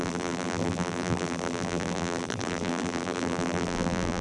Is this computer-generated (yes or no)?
yes